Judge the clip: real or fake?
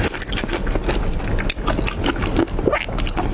real